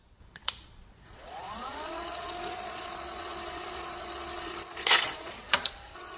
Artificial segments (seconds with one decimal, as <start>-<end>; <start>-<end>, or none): 0.0-6.2